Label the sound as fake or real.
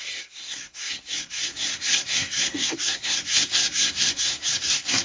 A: fake